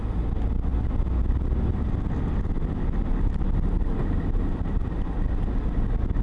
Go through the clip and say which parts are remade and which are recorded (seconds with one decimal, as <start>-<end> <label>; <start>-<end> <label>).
0.0-6.2 recorded